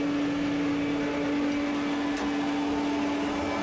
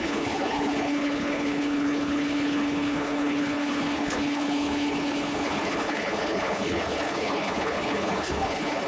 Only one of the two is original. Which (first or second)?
first